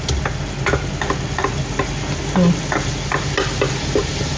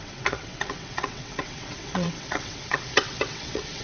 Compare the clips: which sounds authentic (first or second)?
first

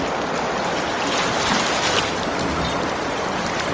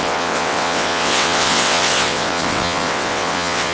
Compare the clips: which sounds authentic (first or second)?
first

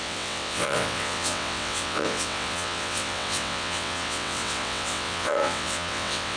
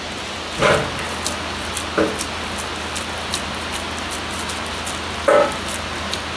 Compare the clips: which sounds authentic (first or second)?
second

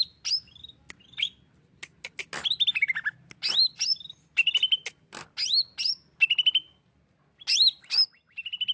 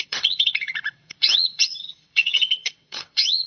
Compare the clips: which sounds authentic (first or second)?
first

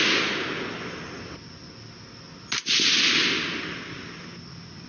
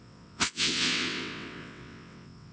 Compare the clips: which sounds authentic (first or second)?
first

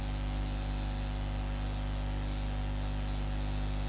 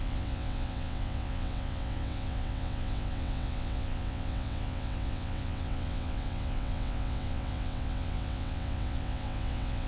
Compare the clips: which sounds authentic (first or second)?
first